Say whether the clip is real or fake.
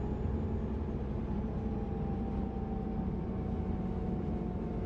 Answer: real